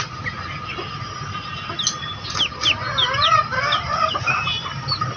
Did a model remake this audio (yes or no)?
no